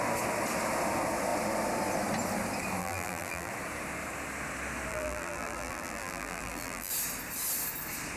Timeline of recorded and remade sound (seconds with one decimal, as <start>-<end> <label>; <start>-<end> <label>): 0.0-2.8 recorded; 2.8-3.5 remade; 3.5-4.9 recorded; 4.9-6.9 remade; 6.9-8.2 recorded